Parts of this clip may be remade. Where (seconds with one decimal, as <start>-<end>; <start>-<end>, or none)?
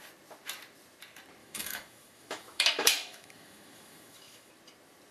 1.4-4.5